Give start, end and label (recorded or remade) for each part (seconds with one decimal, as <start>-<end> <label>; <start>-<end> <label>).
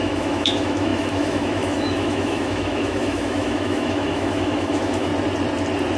0.0-5.1 remade; 5.1-6.0 recorded